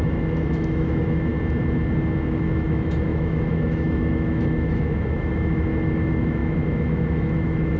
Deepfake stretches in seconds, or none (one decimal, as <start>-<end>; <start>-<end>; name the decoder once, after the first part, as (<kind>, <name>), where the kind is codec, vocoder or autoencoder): 0.0-1.3 (autoencoder, DAC-VAE); 2.3-7.8